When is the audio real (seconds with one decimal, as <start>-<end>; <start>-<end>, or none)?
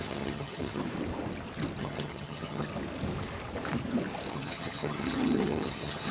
0.8-1.8; 2.7-4.3